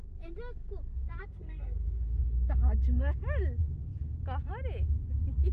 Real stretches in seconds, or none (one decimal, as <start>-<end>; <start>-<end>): 0.0-1.2; 2.0-5.5